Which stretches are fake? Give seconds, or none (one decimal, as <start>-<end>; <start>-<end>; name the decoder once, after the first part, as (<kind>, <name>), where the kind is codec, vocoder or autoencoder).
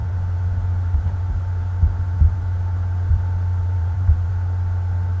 3.6-4.3 (vocoder, BigVGAN v2)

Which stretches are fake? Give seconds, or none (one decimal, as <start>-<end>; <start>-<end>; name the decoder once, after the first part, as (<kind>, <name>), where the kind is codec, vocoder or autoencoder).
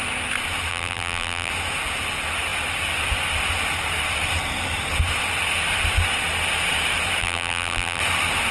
0.7-1.5 (vocoder, BigVGAN v2); 7.2-8.0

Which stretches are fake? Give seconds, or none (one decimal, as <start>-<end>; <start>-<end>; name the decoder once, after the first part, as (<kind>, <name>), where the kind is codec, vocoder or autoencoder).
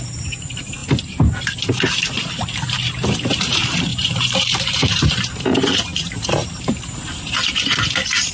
0.0-0.8 (vocoder, BigVGAN v2); 3.4-8.3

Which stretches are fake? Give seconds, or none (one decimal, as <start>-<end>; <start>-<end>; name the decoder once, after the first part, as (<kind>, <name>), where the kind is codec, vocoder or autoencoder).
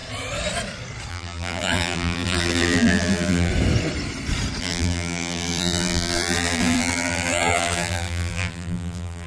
1.1-3.5 (vocoder, BigVGAN v2); 4.6-9.3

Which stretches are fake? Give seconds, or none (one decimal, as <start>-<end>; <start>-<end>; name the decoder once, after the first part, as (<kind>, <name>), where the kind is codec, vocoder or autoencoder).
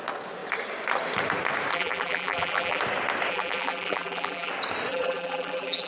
1.7-2.8 (vocoder, BigVGAN v2); 3.3-4.5; 4.9-5.9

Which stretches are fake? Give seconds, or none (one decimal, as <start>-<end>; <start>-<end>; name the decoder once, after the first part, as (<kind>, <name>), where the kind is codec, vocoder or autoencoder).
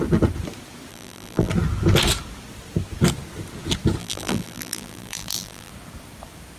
0.9-1.5 (vocoder, BigVGAN v2); 4.0-5.7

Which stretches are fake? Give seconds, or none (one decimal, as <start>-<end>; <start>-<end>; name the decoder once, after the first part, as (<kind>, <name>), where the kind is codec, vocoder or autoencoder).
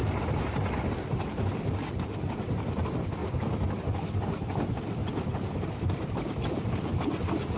0.9-3.2 (vocoder, BigVGAN v2); 3.8-5.0; 5.9-7.6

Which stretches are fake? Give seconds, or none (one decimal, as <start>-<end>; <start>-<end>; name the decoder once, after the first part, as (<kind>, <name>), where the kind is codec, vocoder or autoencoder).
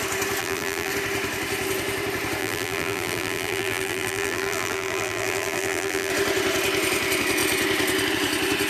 0.4-0.9 (vocoder, BigVGAN v2); 2.4-6.1